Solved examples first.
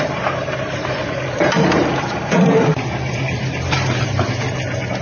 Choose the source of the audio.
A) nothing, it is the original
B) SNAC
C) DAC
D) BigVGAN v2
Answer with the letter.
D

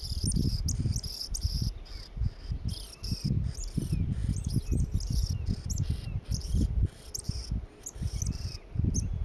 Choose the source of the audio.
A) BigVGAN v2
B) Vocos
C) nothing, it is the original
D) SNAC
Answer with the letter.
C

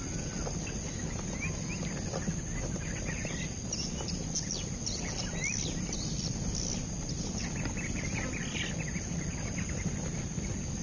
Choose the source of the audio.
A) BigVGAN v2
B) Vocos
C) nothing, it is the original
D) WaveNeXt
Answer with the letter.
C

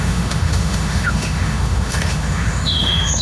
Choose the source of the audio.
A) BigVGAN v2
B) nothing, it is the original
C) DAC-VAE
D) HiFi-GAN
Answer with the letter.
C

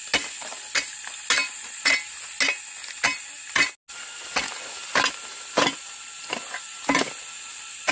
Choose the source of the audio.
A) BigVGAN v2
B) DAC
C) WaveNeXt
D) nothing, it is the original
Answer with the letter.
D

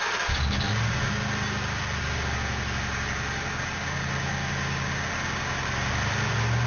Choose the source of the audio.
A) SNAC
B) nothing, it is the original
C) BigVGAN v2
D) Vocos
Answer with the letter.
B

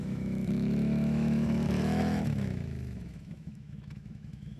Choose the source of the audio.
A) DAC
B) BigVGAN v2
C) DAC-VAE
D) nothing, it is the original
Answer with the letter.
C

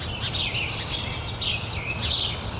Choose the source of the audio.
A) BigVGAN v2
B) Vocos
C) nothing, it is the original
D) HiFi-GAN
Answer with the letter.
C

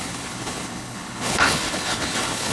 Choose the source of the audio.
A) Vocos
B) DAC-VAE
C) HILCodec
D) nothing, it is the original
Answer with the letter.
C